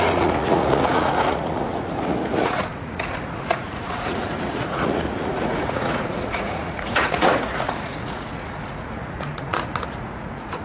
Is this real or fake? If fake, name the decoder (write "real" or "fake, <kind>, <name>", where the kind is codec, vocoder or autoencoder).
fake, vocoder, Vocos